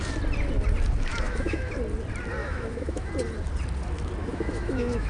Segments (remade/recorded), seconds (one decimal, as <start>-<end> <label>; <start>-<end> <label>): 0.0-1.1 recorded; 1.1-1.7 remade; 1.7-2.4 recorded; 2.4-3.1 remade; 3.1-4.2 recorded; 4.2-5.1 remade